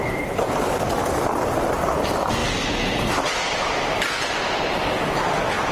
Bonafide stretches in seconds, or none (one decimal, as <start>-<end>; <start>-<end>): 0.0-5.7

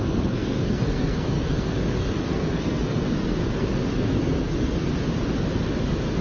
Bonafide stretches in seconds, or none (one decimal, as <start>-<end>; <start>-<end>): 4.9-6.2

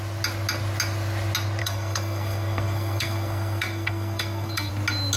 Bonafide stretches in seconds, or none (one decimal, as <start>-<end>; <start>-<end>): 0.0-1.6; 4.7-5.2

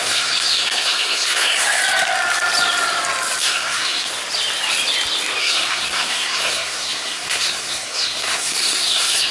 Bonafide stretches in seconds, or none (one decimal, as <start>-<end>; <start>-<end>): 1.8-3.4; 4.1-5.4

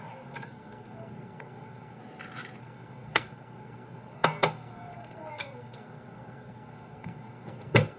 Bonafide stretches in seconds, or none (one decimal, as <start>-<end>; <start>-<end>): 2.0-2.6

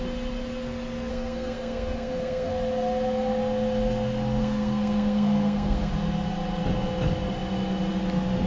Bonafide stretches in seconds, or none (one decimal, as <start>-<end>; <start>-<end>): 0.0-1.1; 2.5-4.4; 5.9-8.5

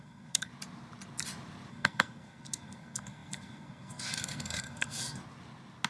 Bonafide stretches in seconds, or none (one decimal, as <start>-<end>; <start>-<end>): 0.5-1.7; 5.2-5.9